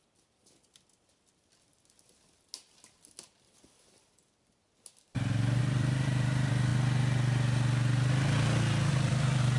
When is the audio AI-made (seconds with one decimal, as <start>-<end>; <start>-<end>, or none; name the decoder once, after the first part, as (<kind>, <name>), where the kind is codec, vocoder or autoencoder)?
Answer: 0.0-0.4 (vocoder, BigVGAN v2); 5.6-6.7; 8.9-9.6